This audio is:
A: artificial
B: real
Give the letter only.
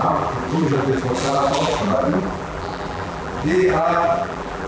A